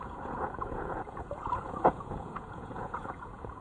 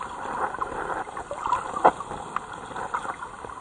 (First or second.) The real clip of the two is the second